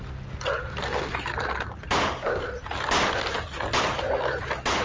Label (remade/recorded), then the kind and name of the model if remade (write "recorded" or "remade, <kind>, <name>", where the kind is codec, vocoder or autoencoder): recorded